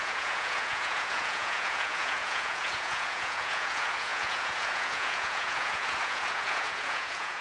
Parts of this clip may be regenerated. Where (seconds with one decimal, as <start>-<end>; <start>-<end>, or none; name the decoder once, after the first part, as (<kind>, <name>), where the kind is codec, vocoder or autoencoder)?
0.0-7.4 (vocoder, Vocos)